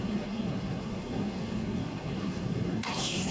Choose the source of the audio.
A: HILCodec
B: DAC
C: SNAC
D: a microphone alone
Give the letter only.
C